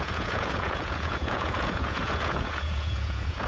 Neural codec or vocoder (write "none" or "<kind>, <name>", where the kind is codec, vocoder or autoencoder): vocoder, Vocos